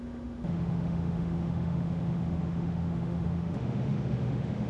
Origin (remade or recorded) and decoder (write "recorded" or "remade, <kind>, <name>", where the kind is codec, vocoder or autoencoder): remade, autoencoder, DAC-VAE